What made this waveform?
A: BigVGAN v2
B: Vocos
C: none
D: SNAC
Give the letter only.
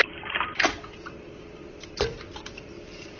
A